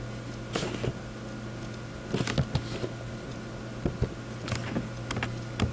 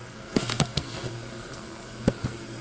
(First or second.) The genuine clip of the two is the first